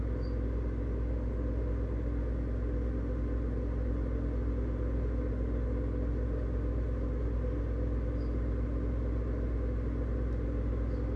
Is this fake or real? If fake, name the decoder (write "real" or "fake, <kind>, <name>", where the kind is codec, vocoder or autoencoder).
real